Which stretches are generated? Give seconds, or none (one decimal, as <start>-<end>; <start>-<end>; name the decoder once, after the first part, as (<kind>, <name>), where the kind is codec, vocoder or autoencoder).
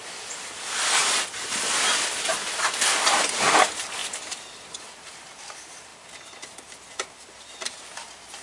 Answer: 0.0-8.4 (vocoder, BigVGAN v2)